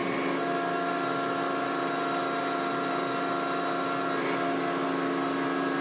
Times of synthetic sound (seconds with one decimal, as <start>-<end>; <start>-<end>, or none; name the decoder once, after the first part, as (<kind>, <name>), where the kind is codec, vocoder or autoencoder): none